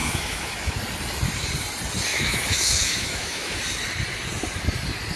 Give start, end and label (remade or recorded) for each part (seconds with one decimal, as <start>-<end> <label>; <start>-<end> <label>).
0.0-0.8 remade; 0.8-2.1 recorded; 2.1-3.6 remade; 3.6-5.2 recorded